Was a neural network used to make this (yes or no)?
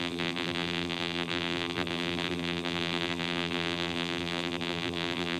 yes